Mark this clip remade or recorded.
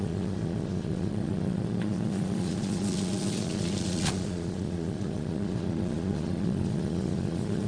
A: remade